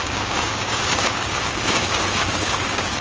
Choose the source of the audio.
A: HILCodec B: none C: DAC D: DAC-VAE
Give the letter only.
C